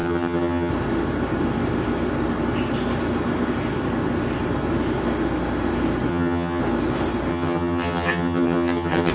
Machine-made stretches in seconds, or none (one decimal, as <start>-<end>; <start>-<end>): 0.0-0.7; 6.1-6.6; 7.3-9.1